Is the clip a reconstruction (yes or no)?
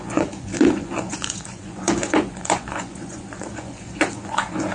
yes